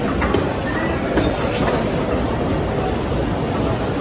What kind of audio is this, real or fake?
real